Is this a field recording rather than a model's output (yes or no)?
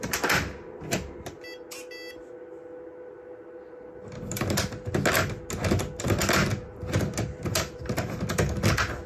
yes